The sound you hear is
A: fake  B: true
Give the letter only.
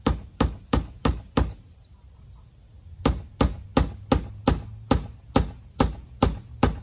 B